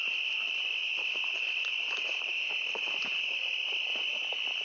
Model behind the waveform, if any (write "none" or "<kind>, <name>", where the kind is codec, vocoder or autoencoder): none